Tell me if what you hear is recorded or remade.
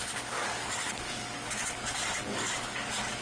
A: remade